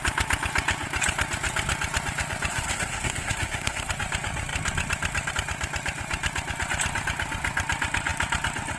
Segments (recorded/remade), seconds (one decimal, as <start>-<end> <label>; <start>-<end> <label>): 0.0-2.5 recorded; 2.5-3.9 remade; 3.9-8.8 recorded